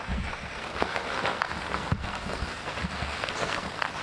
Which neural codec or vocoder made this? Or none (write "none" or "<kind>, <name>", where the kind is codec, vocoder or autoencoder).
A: codec, SNAC